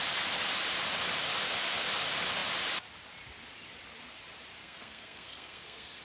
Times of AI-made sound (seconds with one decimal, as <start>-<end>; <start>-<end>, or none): 4.6-6.0